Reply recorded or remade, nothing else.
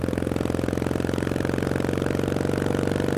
recorded